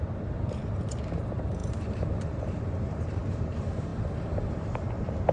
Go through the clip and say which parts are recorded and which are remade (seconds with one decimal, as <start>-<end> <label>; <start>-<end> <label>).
0.0-3.9 remade; 3.9-4.5 recorded; 4.5-5.3 remade